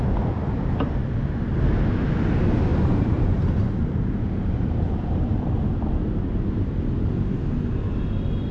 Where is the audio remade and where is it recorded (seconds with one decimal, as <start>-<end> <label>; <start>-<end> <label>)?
0.0-2.7 recorded; 2.7-7.4 remade; 7.4-8.5 recorded